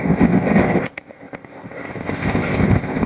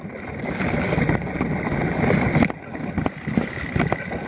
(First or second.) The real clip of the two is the second